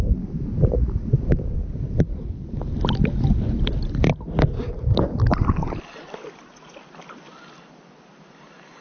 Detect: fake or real real